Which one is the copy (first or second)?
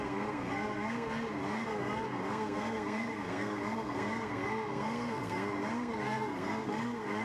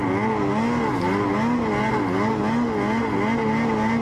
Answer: first